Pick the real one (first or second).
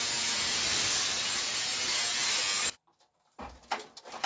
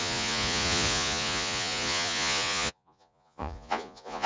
first